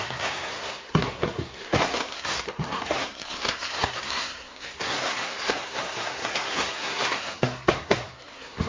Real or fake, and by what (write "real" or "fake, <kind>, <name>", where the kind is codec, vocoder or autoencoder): fake, codec, SNAC